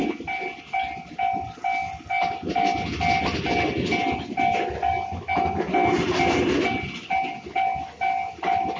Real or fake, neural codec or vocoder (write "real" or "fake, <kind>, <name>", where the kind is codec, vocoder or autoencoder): real